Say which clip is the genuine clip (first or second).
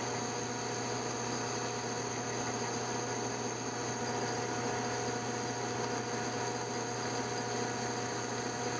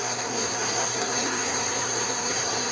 first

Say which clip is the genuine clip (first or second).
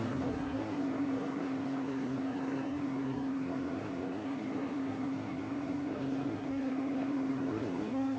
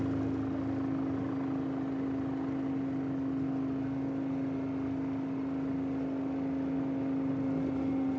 second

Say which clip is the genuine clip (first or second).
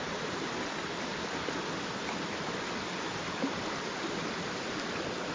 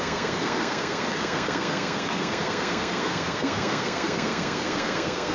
first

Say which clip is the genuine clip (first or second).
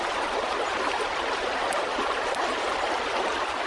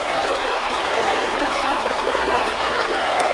first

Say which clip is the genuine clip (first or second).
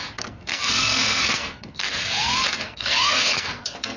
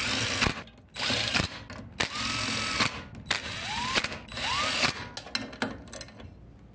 second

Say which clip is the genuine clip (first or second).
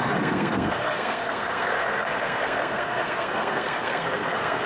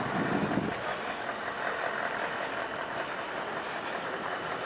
second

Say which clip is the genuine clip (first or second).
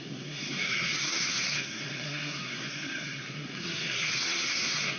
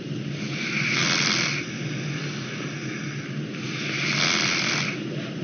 second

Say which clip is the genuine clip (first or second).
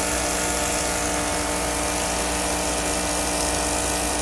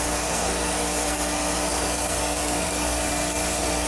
first